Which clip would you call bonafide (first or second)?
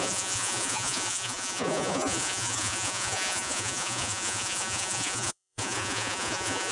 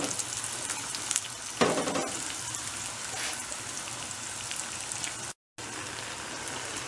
second